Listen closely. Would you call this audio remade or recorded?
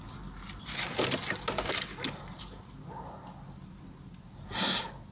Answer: recorded